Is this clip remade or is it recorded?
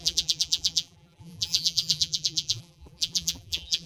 remade